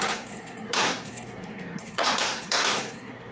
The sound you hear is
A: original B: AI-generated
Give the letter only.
B